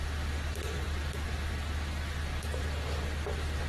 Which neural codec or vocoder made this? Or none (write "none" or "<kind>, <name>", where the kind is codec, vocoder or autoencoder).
none